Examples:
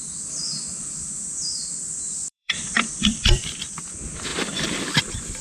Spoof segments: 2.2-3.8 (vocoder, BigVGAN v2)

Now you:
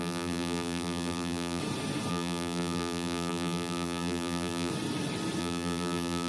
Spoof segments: 0.0-1.6 (vocoder, BigVGAN v2); 2.1-4.7; 5.4-6.3

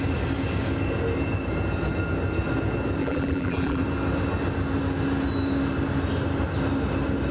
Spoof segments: 3.0-3.8 (vocoder, BigVGAN v2)

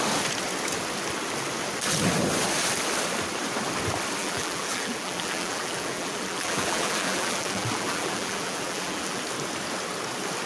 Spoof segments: 4.2-9.2 (vocoder, BigVGAN v2)

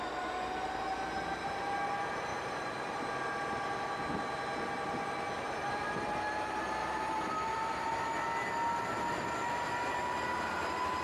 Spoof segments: 2.3-3.1 (vocoder, BigVGAN v2); 6.8-8.0

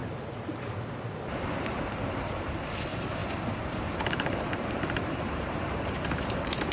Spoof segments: 1.3-6.7 (vocoder, BigVGAN v2)